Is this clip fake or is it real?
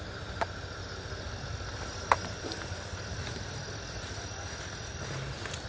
real